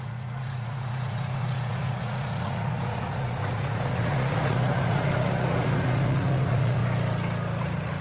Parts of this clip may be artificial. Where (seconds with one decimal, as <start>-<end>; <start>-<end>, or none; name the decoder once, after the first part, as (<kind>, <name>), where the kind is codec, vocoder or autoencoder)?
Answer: 0.0-6.8 (vocoder, Vocos); 7.6-8.0

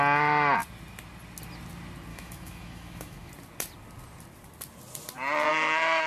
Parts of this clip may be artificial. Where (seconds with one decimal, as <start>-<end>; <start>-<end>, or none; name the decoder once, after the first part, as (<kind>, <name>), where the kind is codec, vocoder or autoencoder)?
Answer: 2.1-3.3 (autoencoder, DAC-VAE); 5.5-6.1

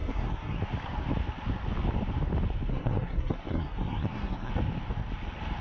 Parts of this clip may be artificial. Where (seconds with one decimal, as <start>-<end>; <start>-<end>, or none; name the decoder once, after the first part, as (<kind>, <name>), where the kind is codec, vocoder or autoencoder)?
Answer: 0.0-0.6 (codec, SNAC); 2.7-4.5

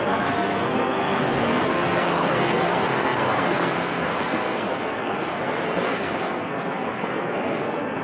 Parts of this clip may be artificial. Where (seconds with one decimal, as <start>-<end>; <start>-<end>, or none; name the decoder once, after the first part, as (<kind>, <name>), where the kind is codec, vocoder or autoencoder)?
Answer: 0.0-8.0 (codec, SNAC)

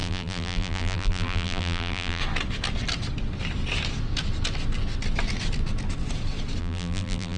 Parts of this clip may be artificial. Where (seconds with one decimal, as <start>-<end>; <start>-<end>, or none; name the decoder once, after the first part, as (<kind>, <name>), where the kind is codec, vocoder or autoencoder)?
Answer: 0.0-2.2 (vocoder, BigVGAN v2); 6.6-7.4

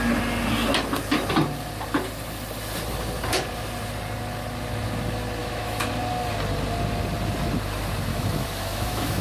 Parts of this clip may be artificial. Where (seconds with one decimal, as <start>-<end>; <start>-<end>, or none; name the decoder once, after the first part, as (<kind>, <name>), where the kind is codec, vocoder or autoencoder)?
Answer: 5.4-5.9 (autoencoder, DAC-VAE); 8.1-9.2